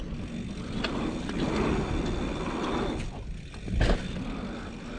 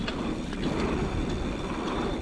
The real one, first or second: first